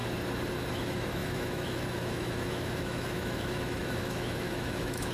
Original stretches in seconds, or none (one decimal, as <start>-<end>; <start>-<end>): 0.0-0.7